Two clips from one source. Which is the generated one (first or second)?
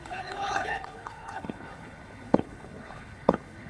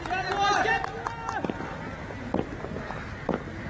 first